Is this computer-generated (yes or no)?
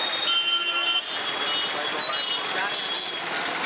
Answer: no